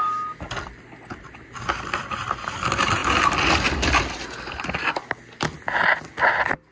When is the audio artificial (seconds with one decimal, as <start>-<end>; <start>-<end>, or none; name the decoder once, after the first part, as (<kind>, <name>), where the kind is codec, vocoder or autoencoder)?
none